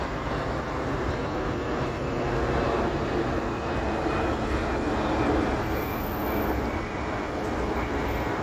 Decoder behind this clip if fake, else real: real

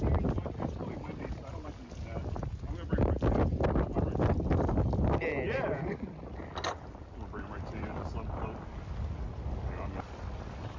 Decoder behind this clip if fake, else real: real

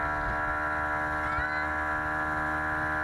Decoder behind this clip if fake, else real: real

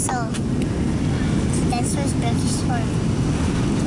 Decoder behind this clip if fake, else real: real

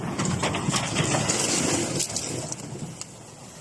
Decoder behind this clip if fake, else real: real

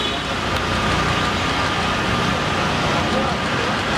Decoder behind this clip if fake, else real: real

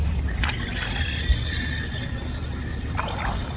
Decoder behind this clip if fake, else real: real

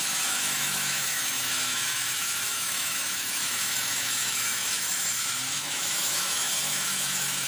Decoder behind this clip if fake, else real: fake, autoencoder, DAC-VAE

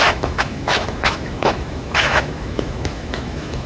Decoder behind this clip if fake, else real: fake, autoencoder, DAC-VAE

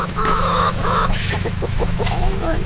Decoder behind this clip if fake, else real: fake, autoencoder, DAC-VAE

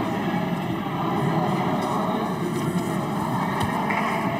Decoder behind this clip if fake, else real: real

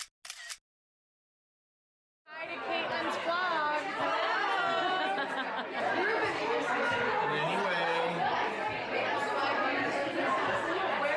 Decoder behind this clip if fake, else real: real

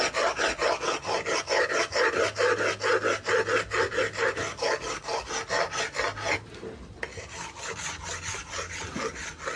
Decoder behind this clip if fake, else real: real